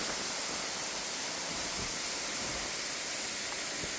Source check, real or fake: real